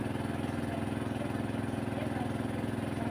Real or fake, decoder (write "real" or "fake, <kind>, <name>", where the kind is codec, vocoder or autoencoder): real